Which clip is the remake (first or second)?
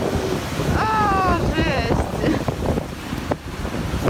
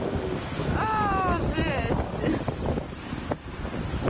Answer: first